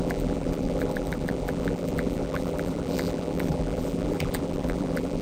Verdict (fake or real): fake